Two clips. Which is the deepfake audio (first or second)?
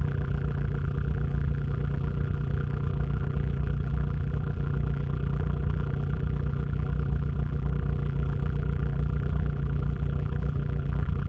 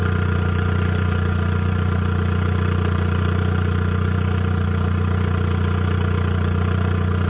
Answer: first